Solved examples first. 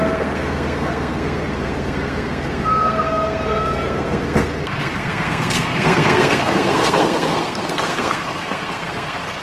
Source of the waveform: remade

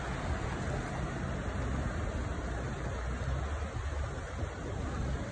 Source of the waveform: recorded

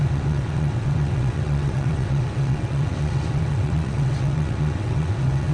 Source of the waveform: remade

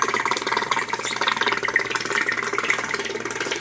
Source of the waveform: recorded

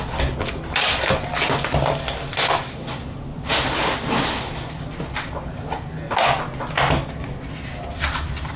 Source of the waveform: recorded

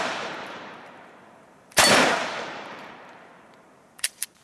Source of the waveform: remade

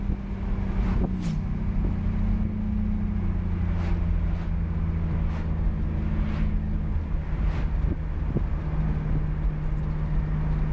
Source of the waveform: recorded